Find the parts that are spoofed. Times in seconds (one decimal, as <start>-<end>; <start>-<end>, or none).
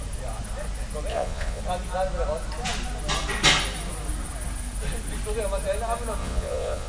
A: 1.1-1.6; 6.2-6.9